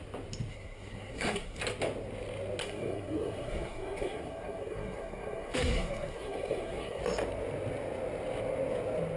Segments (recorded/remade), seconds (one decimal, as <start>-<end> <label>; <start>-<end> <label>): 0.0-0.5 recorded; 0.5-1.6 remade; 1.6-2.6 recorded; 2.6-7.0 remade; 7.0-9.2 recorded